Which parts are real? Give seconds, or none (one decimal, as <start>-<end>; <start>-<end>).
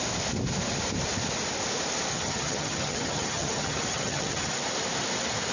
0.0-2.1; 4.5-5.5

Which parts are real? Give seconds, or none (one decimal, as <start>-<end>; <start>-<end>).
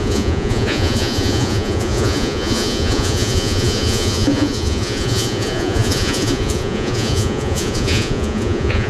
none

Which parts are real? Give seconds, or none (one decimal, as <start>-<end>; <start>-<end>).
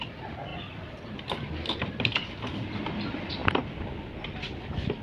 0.0-0.5; 2.3-5.0